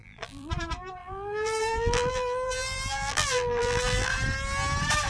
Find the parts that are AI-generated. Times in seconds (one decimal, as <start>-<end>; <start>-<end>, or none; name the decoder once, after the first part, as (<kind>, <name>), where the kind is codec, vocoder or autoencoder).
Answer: 0.0-0.5 (vocoder, BigVGAN v2); 1.0-4.1